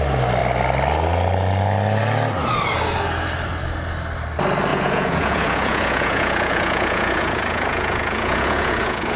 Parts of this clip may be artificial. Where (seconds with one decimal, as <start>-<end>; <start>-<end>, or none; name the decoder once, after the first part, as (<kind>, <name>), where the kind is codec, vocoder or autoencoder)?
4.7-9.2 (vocoder, Vocos)